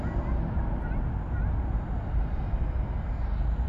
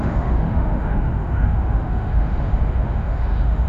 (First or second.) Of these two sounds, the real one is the first